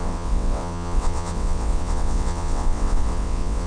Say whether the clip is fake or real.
fake